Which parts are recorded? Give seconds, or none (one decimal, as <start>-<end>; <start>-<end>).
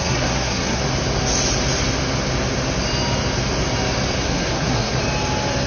0.8-4.2; 5.0-5.7